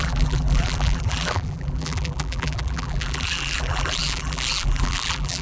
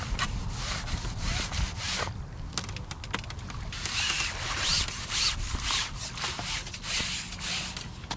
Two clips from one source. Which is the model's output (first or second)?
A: first